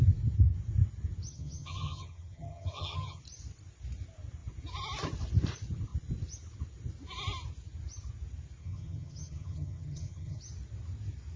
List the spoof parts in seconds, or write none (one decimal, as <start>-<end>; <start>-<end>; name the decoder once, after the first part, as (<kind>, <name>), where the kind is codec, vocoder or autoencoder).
1.3-3.2 (vocoder, HiFi-GAN); 8.6-10.4